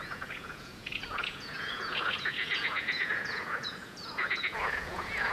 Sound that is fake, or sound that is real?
fake